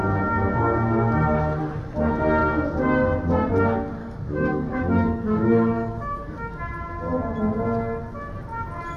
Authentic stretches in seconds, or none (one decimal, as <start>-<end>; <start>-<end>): 0.0-4.0; 6.6-9.0